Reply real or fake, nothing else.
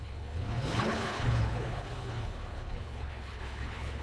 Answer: fake